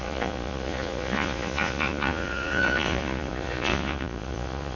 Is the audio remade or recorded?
remade